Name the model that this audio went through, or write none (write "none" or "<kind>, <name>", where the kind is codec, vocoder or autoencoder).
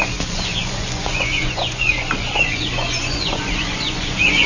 vocoder, Vocos